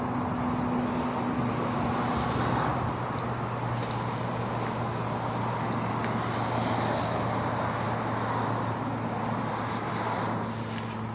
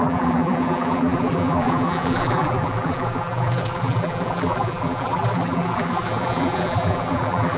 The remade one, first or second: second